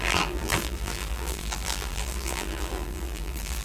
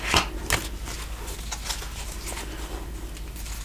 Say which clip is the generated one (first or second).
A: first